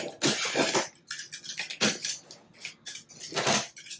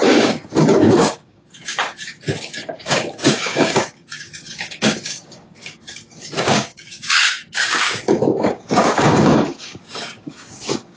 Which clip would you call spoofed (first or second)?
second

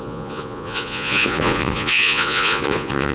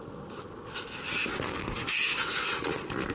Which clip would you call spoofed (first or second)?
first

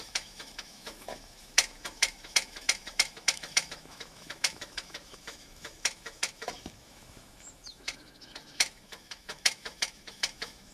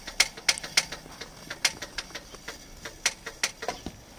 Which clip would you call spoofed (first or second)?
first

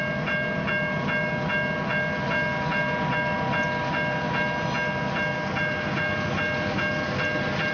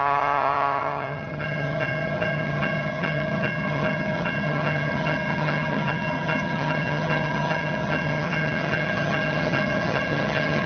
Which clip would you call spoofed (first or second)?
second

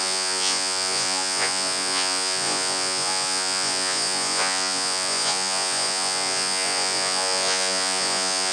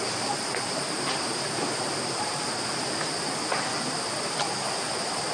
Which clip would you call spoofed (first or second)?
first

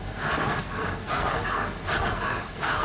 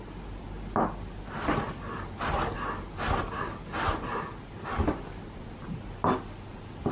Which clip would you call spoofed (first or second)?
first